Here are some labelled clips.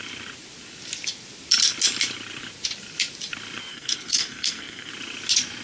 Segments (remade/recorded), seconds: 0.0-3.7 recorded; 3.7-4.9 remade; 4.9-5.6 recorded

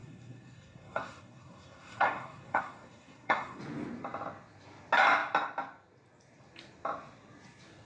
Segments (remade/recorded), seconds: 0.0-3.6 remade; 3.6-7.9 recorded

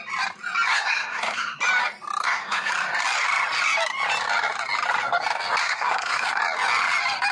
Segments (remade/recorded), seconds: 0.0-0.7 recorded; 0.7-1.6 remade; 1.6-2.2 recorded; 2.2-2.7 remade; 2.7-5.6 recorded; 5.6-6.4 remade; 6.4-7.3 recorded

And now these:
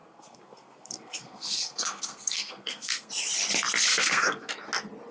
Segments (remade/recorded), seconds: 0.0-3.1 remade; 3.1-3.9 recorded; 3.9-4.5 remade; 4.5-5.1 recorded

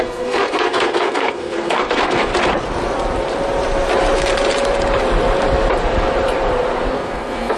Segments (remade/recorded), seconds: 0.0-2.3 remade; 2.3-6.9 recorded; 6.9-7.6 remade

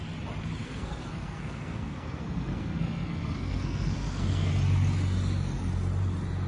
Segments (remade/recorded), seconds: 0.0-0.6 recorded; 0.6-4.5 remade; 4.5-6.5 recorded

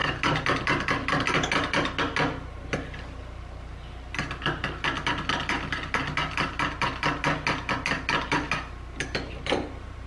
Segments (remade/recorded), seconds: 0.0-10.1 recorded

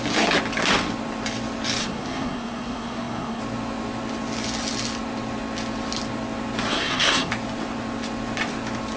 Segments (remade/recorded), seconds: 0.0-1.8 recorded; 1.8-3.4 remade; 3.4-6.7 recorded; 6.7-7.3 remade; 7.3-9.0 recorded